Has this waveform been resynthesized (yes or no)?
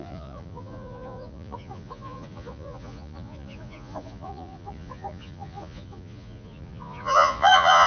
yes